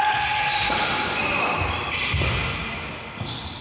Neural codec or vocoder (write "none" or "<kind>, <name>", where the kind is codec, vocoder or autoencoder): none